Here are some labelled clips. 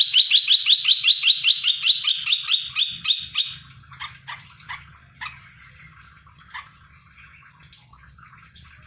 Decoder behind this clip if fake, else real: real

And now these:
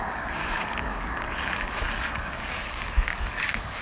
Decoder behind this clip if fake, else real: fake, codec, DAC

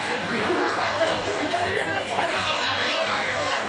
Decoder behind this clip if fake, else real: fake, codec, DAC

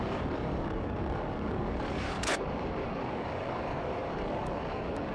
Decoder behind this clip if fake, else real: fake, codec, DAC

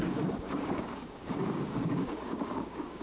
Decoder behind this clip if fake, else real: fake, codec, DAC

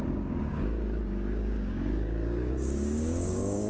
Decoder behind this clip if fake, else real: fake, codec, DAC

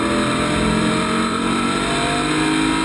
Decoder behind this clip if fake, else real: real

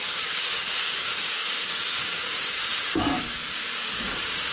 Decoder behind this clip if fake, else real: fake, codec, DAC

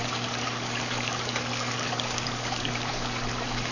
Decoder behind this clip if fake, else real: fake, codec, DAC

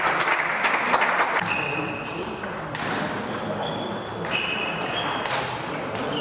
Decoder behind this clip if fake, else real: real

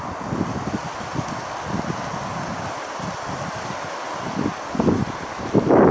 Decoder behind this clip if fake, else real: real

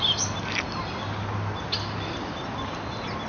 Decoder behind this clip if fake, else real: real